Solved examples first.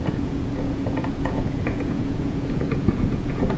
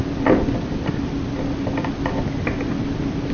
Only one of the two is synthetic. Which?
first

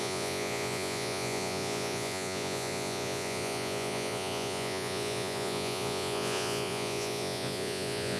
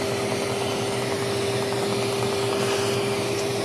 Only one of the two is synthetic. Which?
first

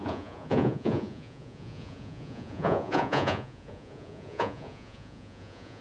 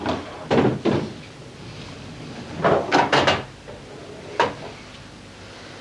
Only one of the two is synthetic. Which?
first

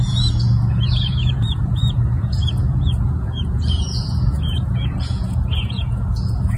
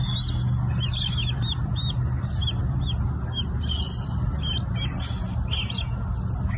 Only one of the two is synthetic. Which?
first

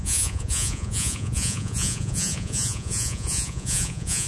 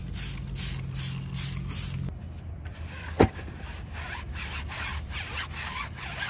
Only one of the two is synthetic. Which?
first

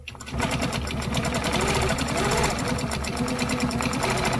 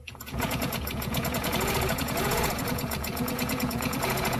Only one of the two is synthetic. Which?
second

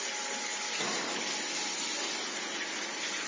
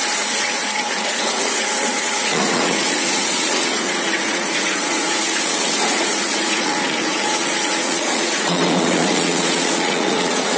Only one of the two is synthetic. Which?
second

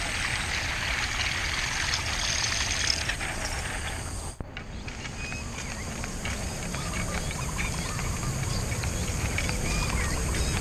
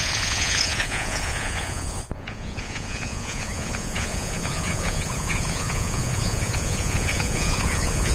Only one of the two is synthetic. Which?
second